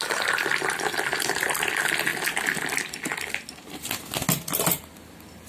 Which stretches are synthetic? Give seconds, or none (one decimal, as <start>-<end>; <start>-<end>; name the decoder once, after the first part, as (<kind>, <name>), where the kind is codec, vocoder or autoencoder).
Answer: none